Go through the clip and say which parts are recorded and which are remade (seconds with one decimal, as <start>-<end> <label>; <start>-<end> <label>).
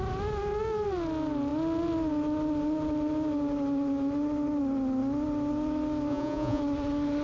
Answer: 0.0-6.1 recorded; 6.1-6.6 remade; 6.6-7.2 recorded